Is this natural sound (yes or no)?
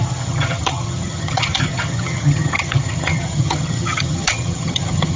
no